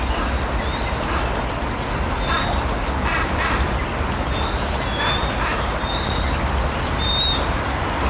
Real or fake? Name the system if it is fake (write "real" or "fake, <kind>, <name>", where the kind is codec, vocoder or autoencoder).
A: real